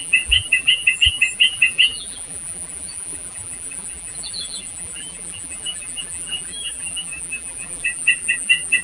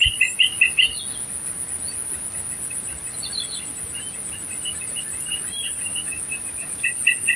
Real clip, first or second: second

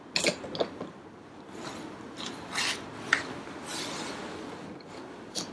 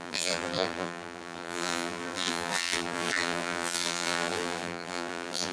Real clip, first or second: first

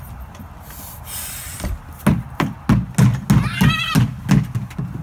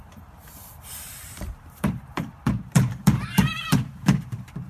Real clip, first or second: first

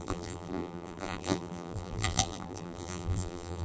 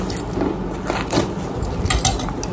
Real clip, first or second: second